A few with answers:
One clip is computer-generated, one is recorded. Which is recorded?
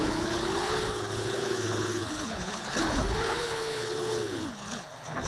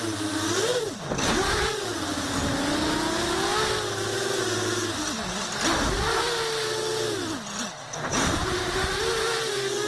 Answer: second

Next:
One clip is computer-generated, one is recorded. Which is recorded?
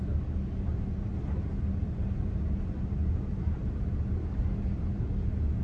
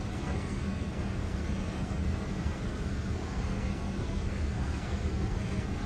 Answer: first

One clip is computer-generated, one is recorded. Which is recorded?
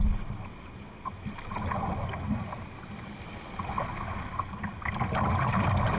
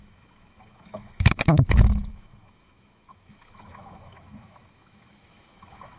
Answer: first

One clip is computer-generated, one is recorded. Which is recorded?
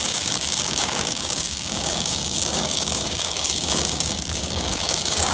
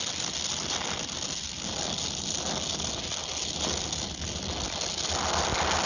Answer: second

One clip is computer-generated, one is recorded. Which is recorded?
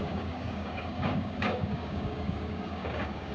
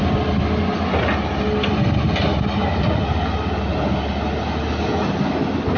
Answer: second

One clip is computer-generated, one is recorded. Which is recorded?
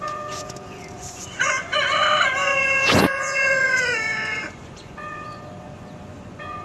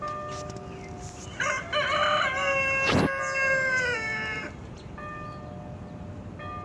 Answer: second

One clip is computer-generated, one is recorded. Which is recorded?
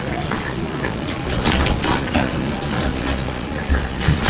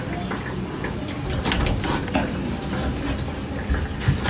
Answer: second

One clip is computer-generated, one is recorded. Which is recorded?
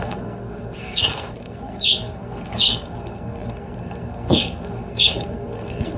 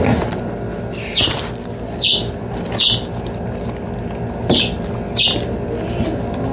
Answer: second